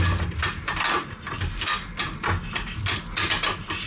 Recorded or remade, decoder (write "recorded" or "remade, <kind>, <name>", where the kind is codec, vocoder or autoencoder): recorded